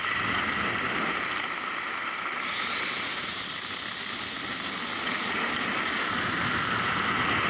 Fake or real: real